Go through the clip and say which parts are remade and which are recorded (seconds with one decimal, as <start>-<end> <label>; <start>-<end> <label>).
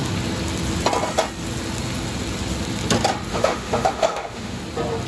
0.0-3.3 recorded; 3.3-4.6 remade; 4.6-5.1 recorded